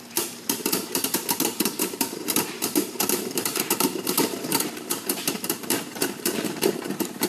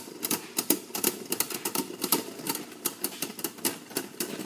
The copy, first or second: first